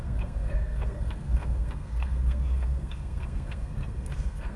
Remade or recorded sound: remade